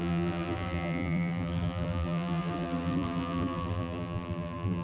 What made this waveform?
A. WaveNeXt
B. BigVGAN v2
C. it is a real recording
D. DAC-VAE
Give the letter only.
B